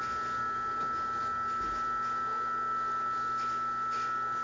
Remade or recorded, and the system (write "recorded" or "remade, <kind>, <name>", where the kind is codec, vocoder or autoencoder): recorded